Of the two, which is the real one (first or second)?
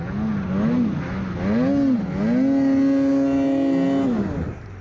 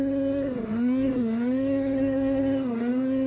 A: first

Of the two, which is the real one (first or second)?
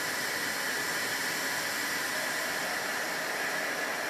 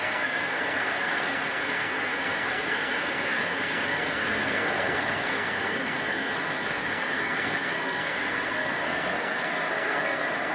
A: first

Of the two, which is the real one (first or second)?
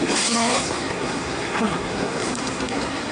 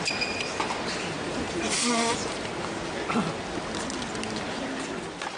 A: second